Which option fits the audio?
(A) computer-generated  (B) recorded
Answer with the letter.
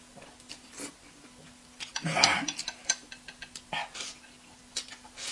B